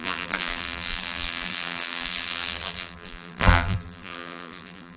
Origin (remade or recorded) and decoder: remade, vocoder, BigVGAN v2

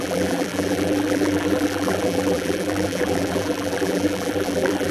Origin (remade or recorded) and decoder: remade, vocoder, BigVGAN v2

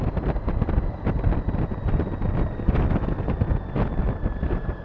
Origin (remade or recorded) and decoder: recorded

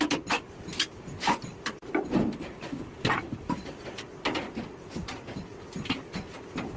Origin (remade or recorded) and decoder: recorded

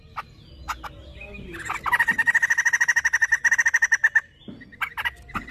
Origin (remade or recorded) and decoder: recorded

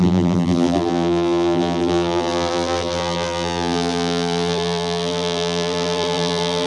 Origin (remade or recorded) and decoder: remade, vocoder, BigVGAN v2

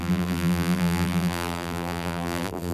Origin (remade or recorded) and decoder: remade, vocoder, BigVGAN v2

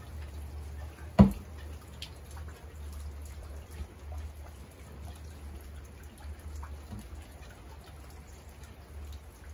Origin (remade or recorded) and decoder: recorded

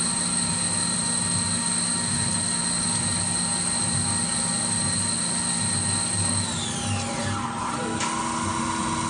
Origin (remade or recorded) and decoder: recorded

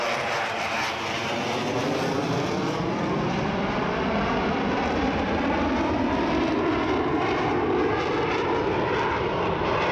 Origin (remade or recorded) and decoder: remade, vocoder, BigVGAN v2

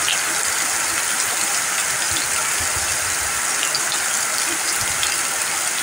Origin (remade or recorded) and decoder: recorded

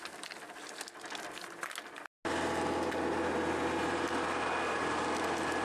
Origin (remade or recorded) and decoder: recorded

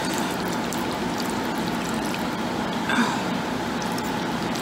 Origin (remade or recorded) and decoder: remade, vocoder, BigVGAN v2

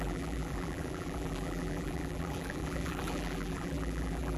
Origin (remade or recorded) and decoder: remade, vocoder, BigVGAN v2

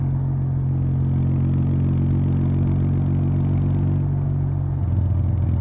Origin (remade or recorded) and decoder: recorded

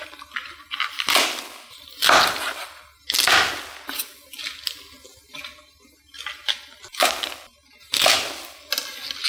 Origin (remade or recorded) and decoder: recorded